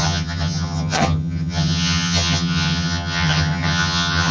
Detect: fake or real fake